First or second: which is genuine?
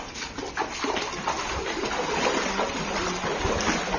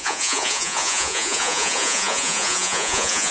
first